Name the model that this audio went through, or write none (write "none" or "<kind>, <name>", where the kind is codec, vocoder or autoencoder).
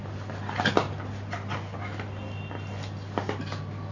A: none